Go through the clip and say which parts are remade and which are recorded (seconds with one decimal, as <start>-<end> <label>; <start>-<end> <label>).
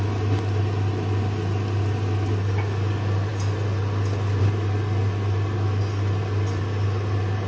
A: 0.0-7.5 recorded